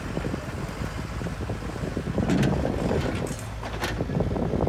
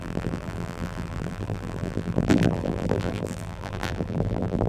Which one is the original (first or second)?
first